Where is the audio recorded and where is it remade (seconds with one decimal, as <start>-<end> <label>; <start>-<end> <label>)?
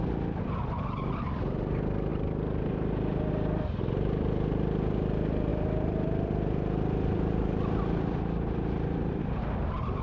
0.0-2.1 recorded; 2.1-3.3 remade; 3.3-5.5 recorded; 5.5-9.2 remade; 9.2-10.0 recorded